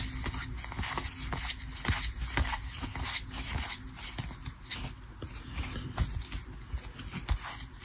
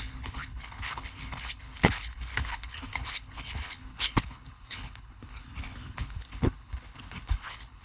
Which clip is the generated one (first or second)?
second